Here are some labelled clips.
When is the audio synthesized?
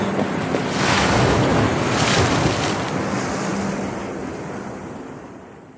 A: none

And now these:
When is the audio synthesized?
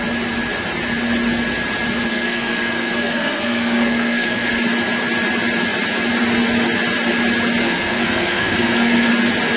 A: 2.1-4.5 (codec, SNAC); 7.6-9.1